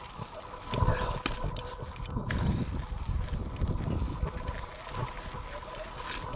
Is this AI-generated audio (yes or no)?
no